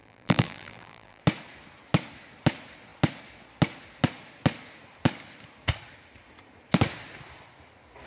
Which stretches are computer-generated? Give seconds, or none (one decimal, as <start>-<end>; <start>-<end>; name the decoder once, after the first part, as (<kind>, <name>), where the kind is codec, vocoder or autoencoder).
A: 0.0-1.2 (vocoder, BigVGAN v2)